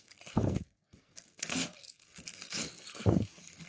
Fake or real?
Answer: fake